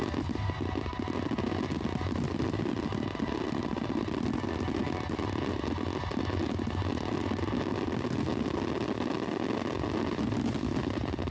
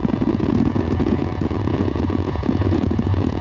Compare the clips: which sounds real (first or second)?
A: first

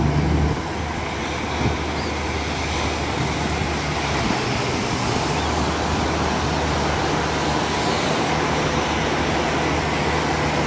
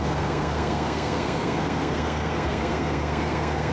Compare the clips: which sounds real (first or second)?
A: first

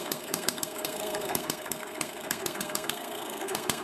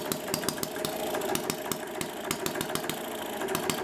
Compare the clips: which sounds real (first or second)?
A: second